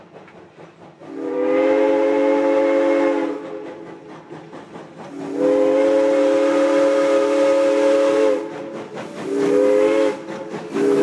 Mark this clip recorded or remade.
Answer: recorded